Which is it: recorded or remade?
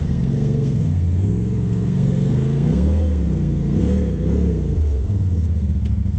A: remade